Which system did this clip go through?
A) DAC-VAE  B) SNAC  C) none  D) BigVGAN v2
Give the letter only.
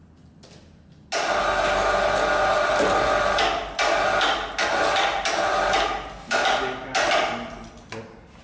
C